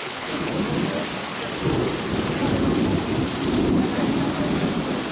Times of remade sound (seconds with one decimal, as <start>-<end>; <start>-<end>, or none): 0.0-0.6